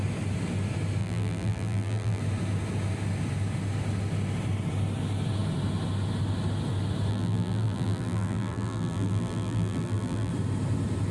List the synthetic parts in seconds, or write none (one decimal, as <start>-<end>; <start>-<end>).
1.0-2.2; 7.1-10.3